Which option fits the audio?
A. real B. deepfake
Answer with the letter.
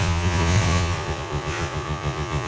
B